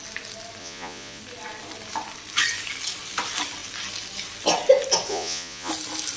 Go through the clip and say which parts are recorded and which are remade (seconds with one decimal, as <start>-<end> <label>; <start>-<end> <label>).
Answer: 0.0-0.6 recorded; 0.6-1.2 remade; 1.2-5.1 recorded; 5.1-5.7 remade; 5.7-6.2 recorded